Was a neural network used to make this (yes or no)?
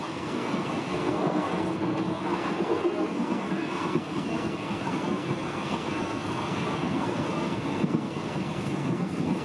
yes